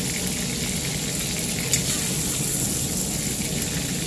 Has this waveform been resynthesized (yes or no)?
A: no